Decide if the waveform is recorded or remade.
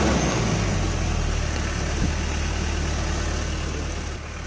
recorded